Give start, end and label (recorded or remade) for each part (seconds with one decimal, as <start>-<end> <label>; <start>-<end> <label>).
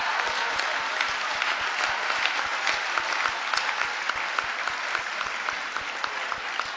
0.0-6.8 recorded